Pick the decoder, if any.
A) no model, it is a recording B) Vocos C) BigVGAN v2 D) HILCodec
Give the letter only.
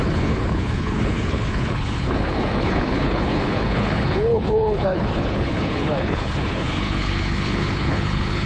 D